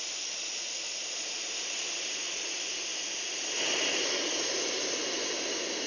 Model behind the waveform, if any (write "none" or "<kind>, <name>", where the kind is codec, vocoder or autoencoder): none